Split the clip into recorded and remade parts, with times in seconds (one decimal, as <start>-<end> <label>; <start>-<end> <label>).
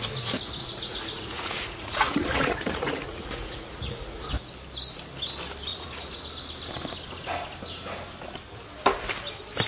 0.0-0.6 recorded; 0.6-4.3 remade; 4.3-5.7 recorded; 5.7-6.2 remade; 6.2-9.7 recorded